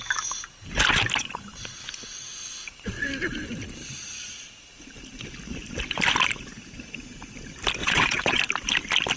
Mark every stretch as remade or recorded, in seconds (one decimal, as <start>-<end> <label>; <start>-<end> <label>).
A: 0.0-7.8 recorded; 7.8-8.4 remade; 8.4-9.2 recorded